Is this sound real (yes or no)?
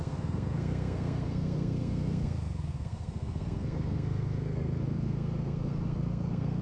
no